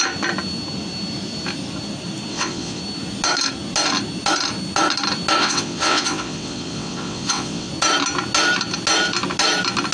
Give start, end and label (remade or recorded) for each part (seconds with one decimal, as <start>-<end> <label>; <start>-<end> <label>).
0.0-2.3 recorded; 2.3-2.8 remade; 2.8-5.4 recorded; 5.4-7.7 remade; 7.7-9.9 recorded